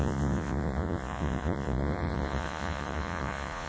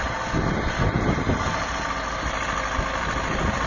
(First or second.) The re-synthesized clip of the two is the first